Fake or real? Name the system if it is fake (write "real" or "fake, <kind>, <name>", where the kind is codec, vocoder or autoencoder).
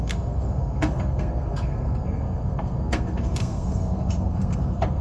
fake, codec, SNAC